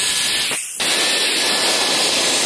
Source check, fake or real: real